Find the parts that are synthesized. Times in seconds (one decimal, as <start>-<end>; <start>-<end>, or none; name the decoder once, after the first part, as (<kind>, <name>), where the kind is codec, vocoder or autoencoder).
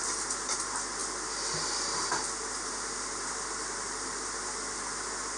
none